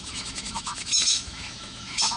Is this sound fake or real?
fake